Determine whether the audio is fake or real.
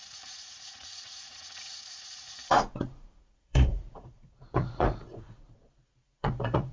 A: fake